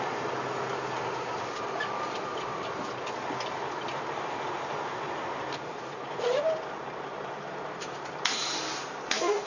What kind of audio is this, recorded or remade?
remade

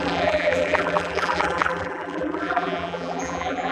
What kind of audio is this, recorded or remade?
remade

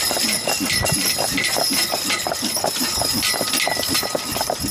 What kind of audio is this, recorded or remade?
remade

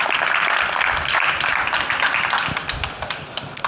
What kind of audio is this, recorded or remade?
remade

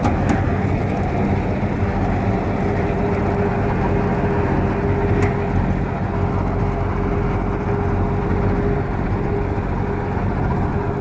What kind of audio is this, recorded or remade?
recorded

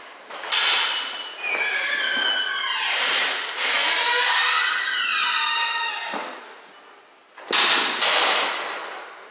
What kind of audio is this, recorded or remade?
recorded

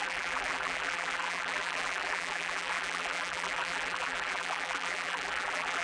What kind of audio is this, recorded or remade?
remade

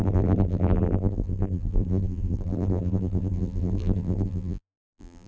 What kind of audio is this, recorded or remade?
remade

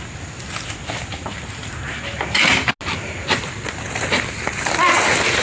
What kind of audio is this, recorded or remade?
recorded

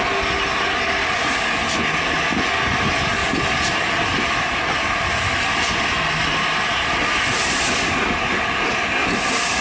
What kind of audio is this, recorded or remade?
recorded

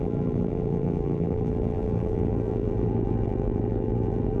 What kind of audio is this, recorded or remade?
remade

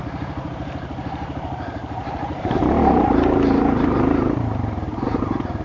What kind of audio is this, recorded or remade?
remade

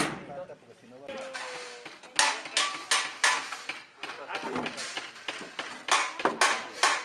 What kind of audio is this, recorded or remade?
recorded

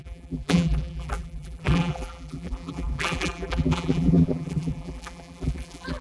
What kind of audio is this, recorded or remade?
remade